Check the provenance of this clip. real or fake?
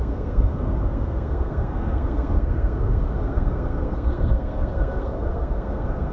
fake